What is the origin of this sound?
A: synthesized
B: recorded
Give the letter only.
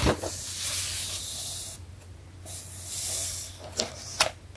B